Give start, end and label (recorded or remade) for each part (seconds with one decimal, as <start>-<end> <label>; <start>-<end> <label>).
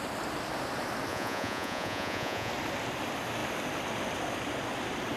0.0-1.1 recorded; 1.1-2.5 remade; 2.5-5.2 recorded